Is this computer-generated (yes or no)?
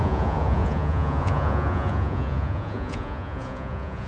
yes